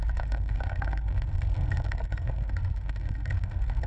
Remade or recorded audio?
remade